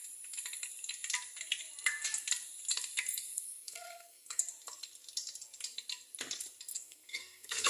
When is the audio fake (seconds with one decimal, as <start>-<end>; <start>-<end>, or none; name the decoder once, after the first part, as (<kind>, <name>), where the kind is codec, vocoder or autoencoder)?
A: 3.3-4.4 (codec, SNAC); 6.7-7.7